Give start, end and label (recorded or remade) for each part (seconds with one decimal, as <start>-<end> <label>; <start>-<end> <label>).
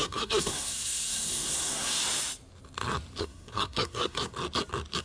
0.0-2.0 remade; 2.0-3.2 recorded; 3.2-4.3 remade; 4.3-5.0 recorded